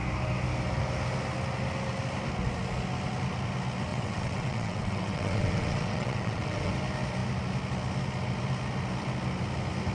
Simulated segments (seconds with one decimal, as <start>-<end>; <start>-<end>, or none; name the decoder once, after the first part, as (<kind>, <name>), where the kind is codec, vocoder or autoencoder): 3.9-6.7 (vocoder, WaveNeXt)